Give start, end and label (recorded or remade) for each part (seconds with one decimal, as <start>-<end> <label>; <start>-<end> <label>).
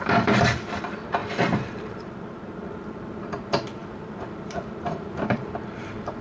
0.0-6.2 remade